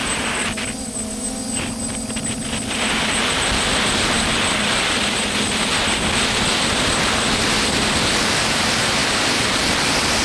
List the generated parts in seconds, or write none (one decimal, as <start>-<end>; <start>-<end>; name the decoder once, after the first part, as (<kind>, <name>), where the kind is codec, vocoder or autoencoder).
0.0-3.4 (vocoder, BigVGAN v2)